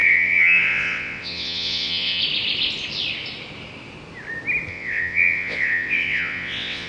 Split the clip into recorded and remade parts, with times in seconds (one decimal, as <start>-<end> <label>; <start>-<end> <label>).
0.0-2.2 remade; 2.2-4.7 recorded; 4.7-6.9 remade